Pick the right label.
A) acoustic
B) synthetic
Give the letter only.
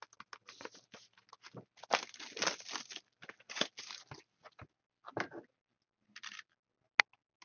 A